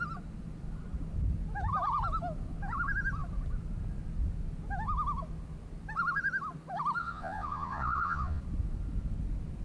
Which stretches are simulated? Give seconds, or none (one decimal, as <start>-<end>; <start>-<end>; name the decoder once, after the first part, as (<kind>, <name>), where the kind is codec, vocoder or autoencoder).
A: 7.0-8.4 (vocoder, Vocos)